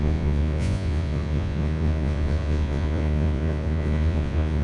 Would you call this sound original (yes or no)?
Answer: no